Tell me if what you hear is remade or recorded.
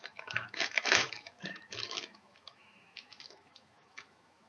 remade